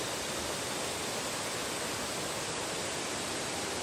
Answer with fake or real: real